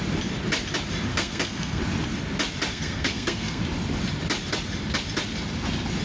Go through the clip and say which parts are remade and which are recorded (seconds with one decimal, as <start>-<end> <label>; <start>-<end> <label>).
0.0-1.1 recorded; 1.1-1.8 remade; 1.8-2.7 recorded; 2.7-3.6 remade; 3.6-6.0 recorded